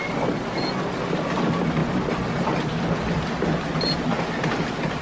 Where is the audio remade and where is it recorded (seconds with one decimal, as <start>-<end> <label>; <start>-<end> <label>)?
0.0-5.0 recorded